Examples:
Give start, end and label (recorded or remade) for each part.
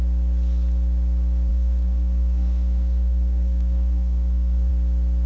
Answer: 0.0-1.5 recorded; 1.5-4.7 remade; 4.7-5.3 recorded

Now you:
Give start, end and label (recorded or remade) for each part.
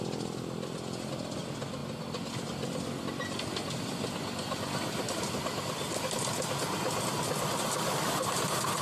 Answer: 0.0-8.8 recorded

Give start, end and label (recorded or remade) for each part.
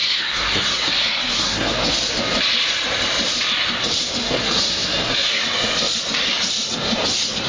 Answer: 0.0-1.7 remade; 1.7-4.2 recorded; 4.2-5.4 remade; 5.4-7.5 recorded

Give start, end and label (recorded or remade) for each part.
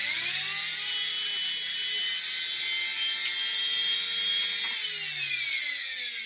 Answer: 0.0-6.3 recorded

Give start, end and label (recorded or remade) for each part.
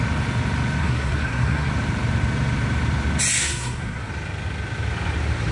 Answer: 0.0-0.8 recorded; 0.8-1.7 remade; 1.7-3.4 recorded; 3.4-4.1 remade; 4.1-5.5 recorded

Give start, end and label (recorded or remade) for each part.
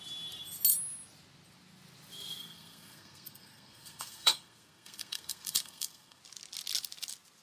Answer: 0.0-2.4 recorded; 2.4-6.2 remade; 6.2-7.4 recorded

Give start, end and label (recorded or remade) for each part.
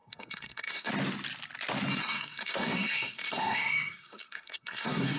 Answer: 0.0-0.9 remade; 0.9-2.0 recorded; 2.0-5.2 remade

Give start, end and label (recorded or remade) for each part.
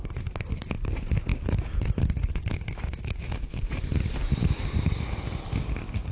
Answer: 0.0-6.1 recorded